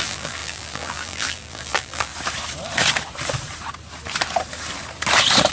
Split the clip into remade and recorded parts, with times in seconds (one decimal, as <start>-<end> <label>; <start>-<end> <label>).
0.0-2.1 remade; 2.1-5.5 recorded